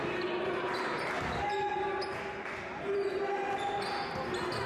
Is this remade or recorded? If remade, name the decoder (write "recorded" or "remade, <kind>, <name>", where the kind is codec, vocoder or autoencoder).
recorded